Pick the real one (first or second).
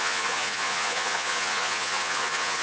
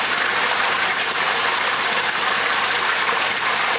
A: second